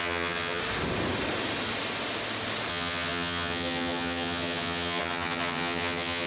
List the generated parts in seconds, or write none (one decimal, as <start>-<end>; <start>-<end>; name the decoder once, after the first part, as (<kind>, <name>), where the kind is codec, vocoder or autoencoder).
0.0-0.6 (vocoder, HiFi-GAN); 2.7-6.3